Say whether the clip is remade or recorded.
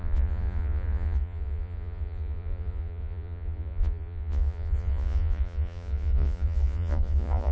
remade